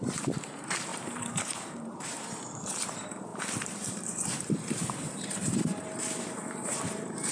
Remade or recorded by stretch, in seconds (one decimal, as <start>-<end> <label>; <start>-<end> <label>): 0.0-7.3 remade